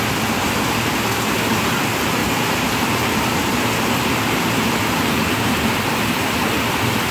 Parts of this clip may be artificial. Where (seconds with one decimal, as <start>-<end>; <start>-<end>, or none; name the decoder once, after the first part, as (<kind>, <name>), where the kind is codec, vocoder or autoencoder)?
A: 2.2-6.3 (vocoder, BigVGAN v2)